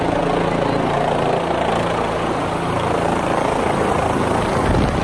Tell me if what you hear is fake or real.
real